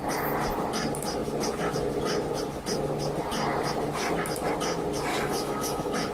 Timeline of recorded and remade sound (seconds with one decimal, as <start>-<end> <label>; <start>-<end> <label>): 0.0-5.1 recorded; 5.1-6.1 remade